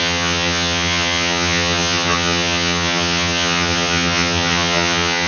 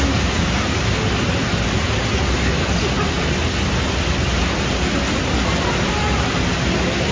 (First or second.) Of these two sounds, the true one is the second